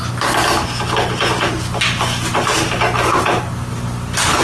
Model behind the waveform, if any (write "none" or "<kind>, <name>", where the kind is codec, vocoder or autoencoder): none